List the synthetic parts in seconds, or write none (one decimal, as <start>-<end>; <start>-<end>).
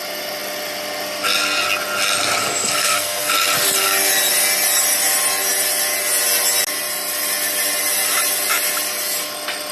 2.4-3.3